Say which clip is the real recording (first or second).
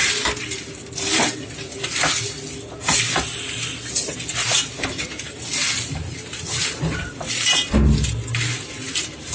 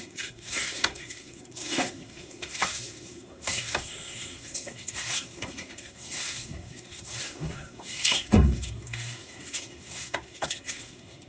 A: first